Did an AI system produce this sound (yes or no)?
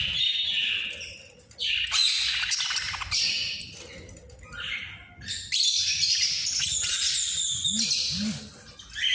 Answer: no